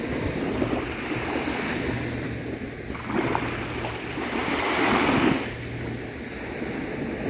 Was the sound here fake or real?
real